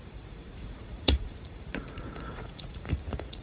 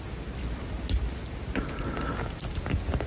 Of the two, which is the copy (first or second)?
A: first